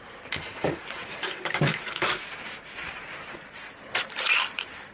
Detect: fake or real fake